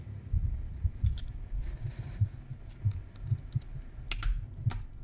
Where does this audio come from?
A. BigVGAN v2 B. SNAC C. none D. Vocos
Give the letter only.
C